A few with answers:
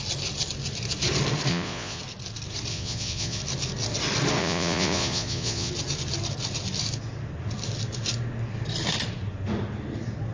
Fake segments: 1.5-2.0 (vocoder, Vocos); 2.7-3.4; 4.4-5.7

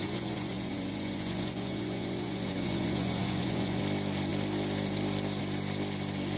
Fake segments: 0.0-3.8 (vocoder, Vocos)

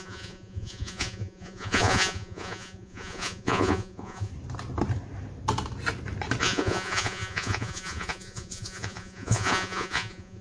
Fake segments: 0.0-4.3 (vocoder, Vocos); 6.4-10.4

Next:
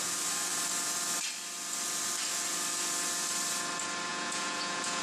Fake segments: 4.1-5.0 (vocoder, Vocos)

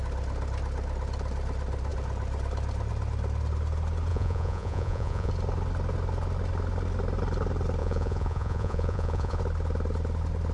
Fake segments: 4.1-5.3 (vocoder, Vocos); 7.8-9.4

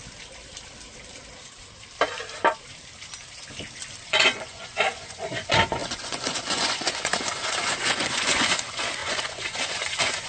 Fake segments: 4.0-10.3 (vocoder, Vocos)

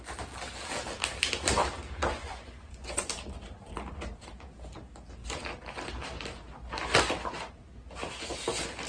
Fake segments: 2.1-3.1 (vocoder, Vocos)